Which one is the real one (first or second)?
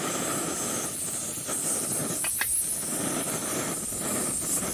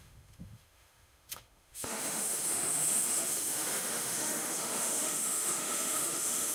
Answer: first